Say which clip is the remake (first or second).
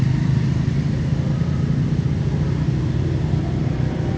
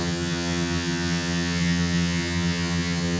second